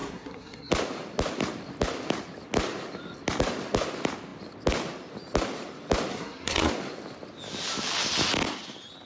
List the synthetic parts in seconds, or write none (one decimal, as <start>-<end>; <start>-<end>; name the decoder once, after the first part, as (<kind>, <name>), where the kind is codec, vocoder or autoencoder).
0.0-0.7 (codec, SNAC); 6.1-6.7

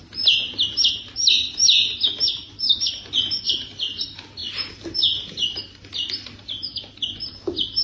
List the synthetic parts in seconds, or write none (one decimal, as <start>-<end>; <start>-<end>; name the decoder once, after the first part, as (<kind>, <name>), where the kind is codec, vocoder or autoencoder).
none

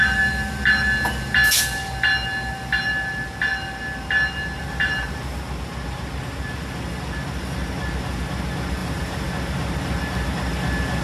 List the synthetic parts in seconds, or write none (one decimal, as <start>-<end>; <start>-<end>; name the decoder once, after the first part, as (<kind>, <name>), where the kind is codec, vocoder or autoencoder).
4.6-5.4 (vocoder, BigVGAN v2); 8.8-9.3

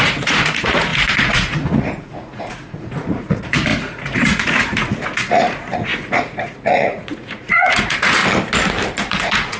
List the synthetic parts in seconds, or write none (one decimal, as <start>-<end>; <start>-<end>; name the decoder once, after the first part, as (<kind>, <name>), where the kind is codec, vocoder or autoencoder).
0.0-8.2 (vocoder, Vocos); 9.1-9.6

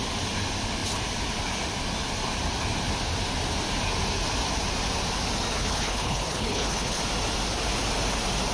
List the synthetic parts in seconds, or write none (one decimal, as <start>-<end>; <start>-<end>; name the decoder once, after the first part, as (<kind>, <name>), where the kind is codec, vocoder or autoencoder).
5.6-7.0 (codec, HILCodec)

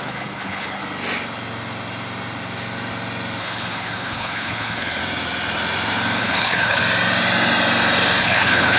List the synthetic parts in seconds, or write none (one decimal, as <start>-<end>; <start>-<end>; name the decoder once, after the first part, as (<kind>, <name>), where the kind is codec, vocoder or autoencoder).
0.0-0.8 (codec, HILCodec); 3.4-5.0; 6.2-6.8; 8.2-8.8

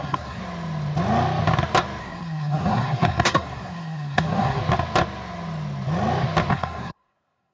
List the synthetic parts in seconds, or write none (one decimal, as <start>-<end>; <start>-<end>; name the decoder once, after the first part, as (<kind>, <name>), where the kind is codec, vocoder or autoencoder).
0.0-0.4 (codec, SNAC); 2.0-4.6; 6.5-7.5

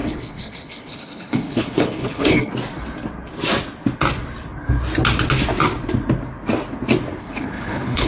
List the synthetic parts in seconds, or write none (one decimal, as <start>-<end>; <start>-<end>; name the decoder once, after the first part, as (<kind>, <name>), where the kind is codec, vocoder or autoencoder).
0.0-2.5 (codec, HILCodec); 7.2-8.1